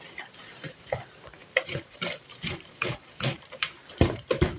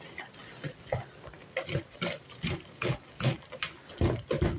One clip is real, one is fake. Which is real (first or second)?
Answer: second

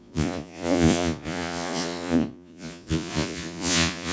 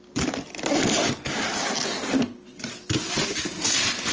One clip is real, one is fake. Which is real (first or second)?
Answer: second